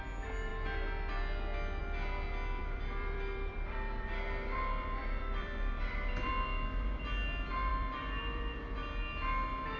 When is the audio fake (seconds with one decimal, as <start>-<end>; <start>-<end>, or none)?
2.6-6.3; 7.7-8.6